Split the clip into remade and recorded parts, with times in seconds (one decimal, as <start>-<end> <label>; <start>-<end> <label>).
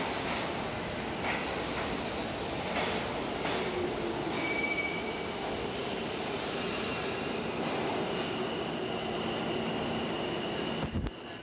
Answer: 0.0-5.8 recorded; 5.8-7.1 remade; 7.1-8.8 recorded; 8.8-10.5 remade; 10.5-11.4 recorded